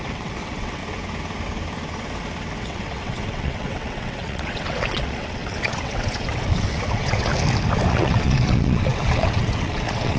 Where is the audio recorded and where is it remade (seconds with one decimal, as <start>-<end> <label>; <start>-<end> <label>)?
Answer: 0.0-0.8 remade; 0.8-2.6 recorded; 2.6-7.3 remade; 7.3-7.9 recorded; 7.9-10.2 remade